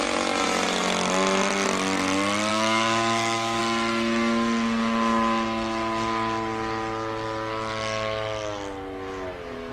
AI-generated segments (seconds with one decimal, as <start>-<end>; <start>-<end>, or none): 2.5-3.6